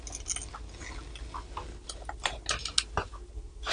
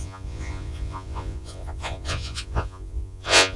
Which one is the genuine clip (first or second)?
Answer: first